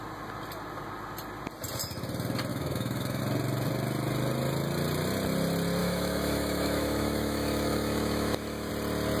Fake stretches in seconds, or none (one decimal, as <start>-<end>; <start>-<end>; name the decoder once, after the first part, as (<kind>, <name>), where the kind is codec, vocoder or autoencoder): 2.5-3.2 (autoencoder, DAC-VAE); 5.8-8.7